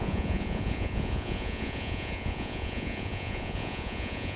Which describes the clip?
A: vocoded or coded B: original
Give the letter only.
A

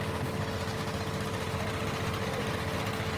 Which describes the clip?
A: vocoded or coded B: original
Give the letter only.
B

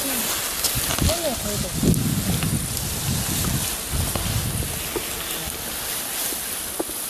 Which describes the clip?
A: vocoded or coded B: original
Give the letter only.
B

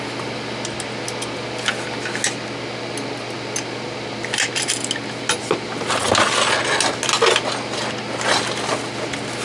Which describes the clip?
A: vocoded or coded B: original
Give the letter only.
B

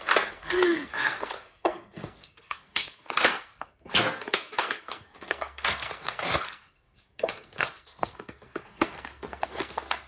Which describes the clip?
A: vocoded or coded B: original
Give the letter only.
A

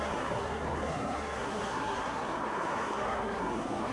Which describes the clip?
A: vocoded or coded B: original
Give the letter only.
A